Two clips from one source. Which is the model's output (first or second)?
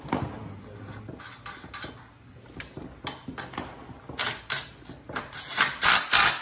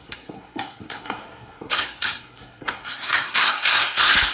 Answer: second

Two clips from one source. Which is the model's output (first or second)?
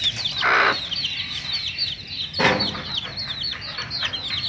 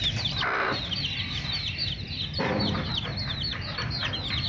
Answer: second